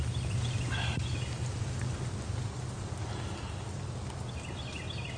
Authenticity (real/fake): real